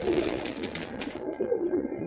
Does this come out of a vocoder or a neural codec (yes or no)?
yes